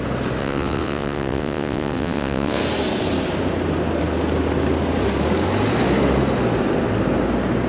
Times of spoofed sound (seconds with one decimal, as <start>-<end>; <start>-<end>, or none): 0.4-2.6